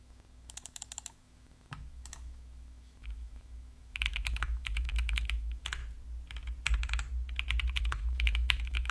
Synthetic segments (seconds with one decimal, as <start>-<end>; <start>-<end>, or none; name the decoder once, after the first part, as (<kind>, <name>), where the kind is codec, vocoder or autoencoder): 0.0-5.8 (autoencoder, DAC-VAE); 7.8-8.9